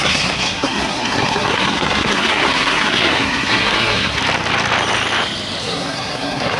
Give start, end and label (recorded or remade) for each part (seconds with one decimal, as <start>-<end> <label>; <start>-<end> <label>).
0.0-4.2 remade; 4.2-5.6 recorded; 5.6-6.6 remade